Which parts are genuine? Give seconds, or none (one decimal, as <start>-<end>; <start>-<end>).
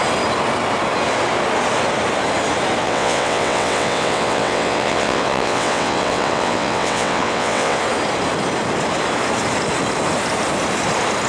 0.0-2.8; 7.8-11.3